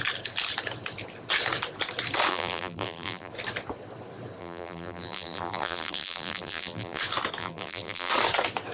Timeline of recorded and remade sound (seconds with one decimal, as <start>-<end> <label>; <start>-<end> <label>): 0.0-2.3 recorded; 2.3-3.3 remade; 3.3-4.4 recorded; 4.4-7.0 remade; 7.0-7.4 recorded; 7.4-8.1 remade; 8.1-8.7 recorded